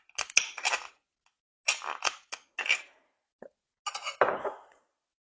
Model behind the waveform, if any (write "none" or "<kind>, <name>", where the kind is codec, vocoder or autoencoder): none